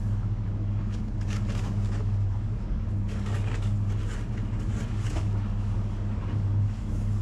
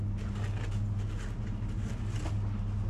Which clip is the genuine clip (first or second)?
second